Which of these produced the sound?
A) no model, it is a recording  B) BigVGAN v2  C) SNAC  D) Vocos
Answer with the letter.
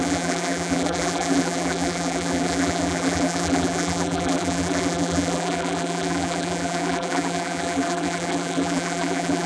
B